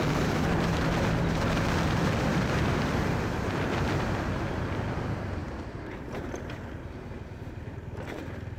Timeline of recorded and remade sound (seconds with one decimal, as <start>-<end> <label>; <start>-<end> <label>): 0.0-2.3 recorded; 2.3-4.5 remade; 4.5-5.4 recorded; 5.4-5.9 remade; 5.9-8.6 recorded